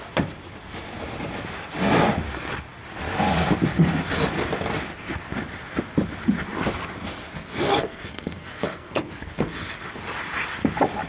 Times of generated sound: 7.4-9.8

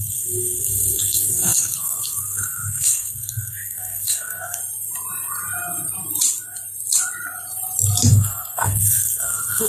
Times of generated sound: 0.0-4.6; 8.1-9.7

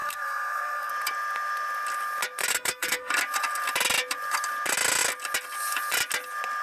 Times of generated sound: 0.0-0.9; 2.5-3.1